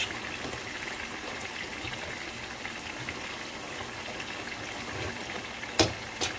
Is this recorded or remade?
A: recorded